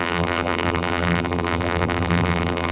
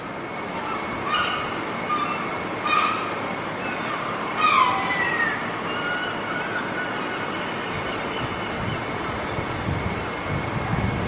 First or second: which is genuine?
second